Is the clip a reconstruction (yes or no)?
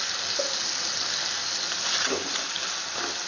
no